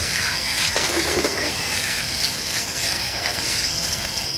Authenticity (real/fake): fake